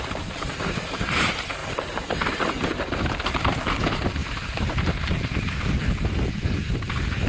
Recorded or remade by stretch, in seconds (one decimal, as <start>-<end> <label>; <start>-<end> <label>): 0.0-1.6 remade; 1.6-2.5 recorded; 2.5-7.3 remade